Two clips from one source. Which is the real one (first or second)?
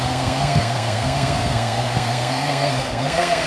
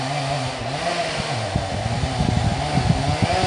second